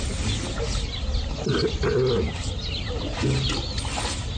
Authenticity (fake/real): real